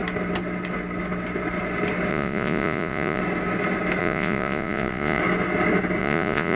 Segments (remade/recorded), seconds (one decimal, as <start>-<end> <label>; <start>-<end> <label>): 0.0-2.1 recorded; 2.1-3.2 remade; 3.2-4.0 recorded; 4.0-5.2 remade; 5.2-6.0 recorded; 6.0-6.6 remade

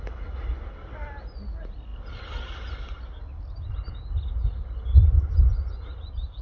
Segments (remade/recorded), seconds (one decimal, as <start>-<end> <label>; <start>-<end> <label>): 0.0-6.4 recorded

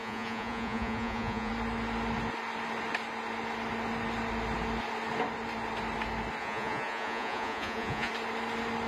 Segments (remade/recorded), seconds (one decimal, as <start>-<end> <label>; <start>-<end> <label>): 0.0-1.5 remade; 1.5-6.4 recorded; 6.4-8.1 remade; 8.1-8.9 recorded

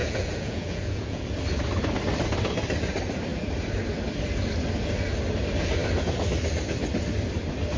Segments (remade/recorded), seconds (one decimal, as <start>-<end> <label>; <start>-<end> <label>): 0.0-1.4 remade; 1.4-7.8 recorded

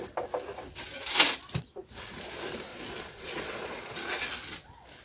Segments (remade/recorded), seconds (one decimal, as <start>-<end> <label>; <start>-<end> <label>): 0.0-2.7 recorded; 2.7-4.3 remade; 4.3-5.0 recorded